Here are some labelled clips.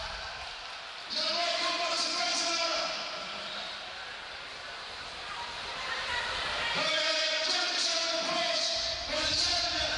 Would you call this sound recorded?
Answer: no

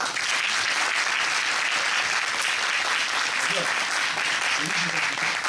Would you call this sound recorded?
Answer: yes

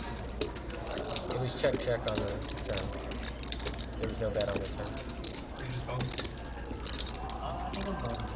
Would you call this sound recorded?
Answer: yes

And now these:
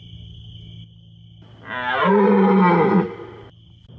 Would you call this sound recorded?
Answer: yes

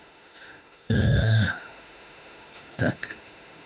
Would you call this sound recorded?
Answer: no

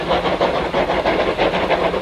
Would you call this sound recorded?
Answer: yes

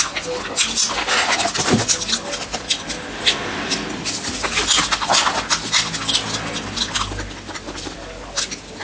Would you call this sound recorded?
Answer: yes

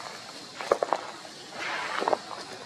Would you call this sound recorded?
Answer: yes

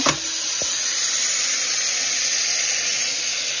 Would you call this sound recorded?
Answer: yes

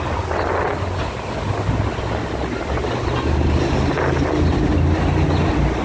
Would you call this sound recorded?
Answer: yes